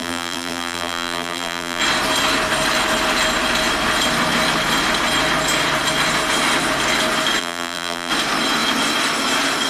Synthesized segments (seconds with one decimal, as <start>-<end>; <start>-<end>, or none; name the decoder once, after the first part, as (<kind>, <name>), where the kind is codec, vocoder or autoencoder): 0.0-1.8 (vocoder, BigVGAN v2); 7.4-8.1